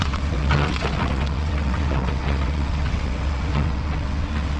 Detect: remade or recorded remade